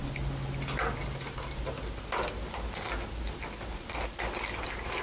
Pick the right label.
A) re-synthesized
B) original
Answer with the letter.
B